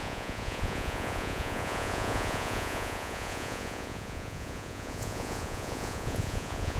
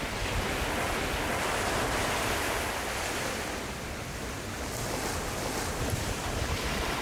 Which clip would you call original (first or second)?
second